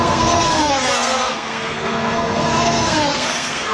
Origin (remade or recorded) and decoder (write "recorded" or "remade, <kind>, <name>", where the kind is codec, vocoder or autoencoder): remade, codec, SNAC